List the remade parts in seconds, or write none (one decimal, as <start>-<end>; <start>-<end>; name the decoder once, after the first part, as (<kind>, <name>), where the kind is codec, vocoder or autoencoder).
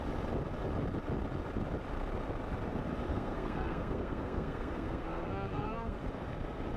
3.1-6.0 (codec, SNAC)